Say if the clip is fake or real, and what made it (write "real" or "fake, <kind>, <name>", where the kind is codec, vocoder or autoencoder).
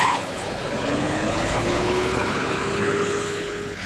fake, codec, HILCodec